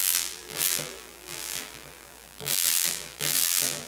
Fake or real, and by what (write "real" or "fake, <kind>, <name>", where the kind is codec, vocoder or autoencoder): fake, vocoder, BigVGAN v2